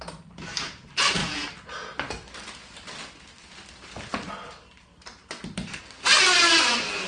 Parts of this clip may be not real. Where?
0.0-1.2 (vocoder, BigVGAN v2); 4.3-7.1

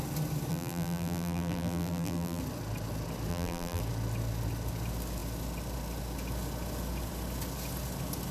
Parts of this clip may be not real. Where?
0.5-2.4 (vocoder, BigVGAN v2); 3.3-3.8

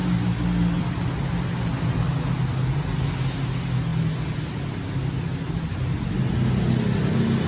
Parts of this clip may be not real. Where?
none

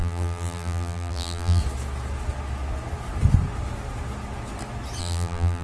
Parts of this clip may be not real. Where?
0.0-1.6 (vocoder, BigVGAN v2); 5.0-5.6

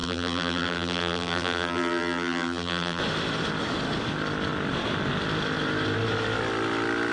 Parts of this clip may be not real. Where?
0.0-3.0 (vocoder, BigVGAN v2)

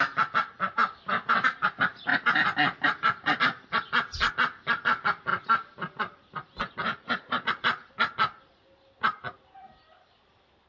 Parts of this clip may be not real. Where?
none